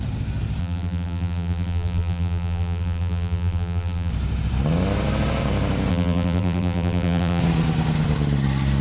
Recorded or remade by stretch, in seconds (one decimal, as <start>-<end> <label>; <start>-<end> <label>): 0.0-0.6 recorded; 0.6-4.1 remade; 4.1-5.9 recorded; 5.9-7.4 remade; 7.4-8.8 recorded

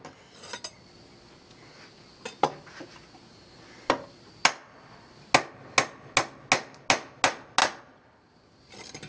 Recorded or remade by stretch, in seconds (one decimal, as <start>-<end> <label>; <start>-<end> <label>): 0.0-9.1 recorded

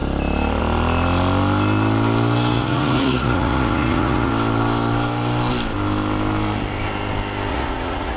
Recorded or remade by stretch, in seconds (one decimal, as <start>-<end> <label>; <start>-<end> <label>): 0.0-2.5 recorded; 2.5-4.3 remade; 4.3-7.5 recorded; 7.5-8.2 remade

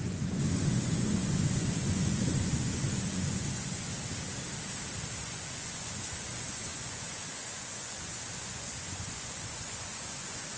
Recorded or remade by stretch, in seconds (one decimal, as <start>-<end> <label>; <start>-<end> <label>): 0.0-3.9 remade; 3.9-5.2 recorded; 5.2-10.6 remade